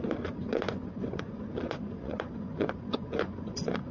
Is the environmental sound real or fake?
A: fake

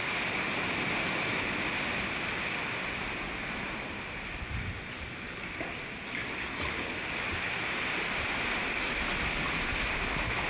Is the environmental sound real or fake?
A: real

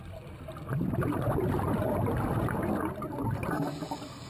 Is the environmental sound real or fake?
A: real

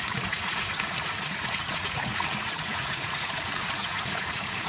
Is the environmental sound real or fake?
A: fake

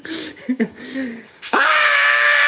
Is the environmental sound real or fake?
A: fake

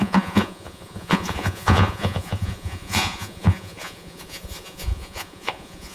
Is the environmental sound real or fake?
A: fake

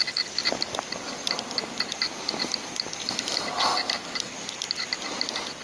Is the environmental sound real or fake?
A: real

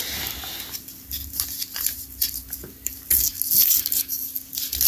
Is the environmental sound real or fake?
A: real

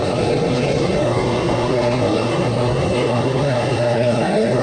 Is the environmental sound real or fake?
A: fake